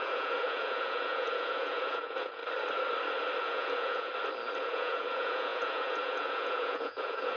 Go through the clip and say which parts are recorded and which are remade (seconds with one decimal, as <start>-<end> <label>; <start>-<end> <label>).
0.0-2.4 remade; 2.4-3.4 recorded; 3.4-4.1 remade; 4.1-4.6 recorded; 4.6-7.4 remade

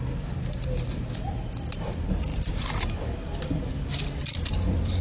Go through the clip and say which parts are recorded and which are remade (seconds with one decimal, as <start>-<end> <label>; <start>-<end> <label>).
0.0-5.0 recorded

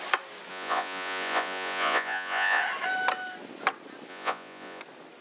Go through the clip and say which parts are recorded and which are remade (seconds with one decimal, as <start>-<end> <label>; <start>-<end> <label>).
0.0-0.5 recorded; 0.5-2.6 remade; 2.6-4.1 recorded; 4.1-4.8 remade; 4.8-5.2 recorded

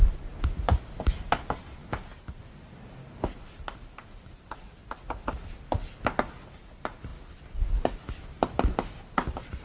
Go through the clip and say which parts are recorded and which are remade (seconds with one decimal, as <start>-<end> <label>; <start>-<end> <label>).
0.0-9.6 recorded